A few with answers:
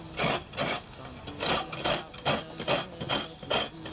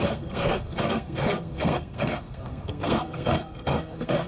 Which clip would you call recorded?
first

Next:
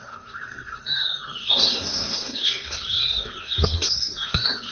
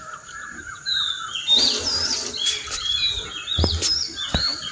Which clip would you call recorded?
second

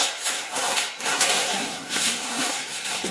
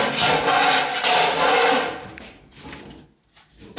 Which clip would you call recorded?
second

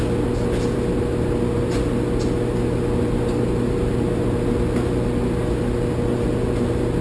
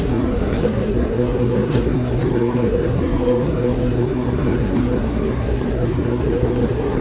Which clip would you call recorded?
first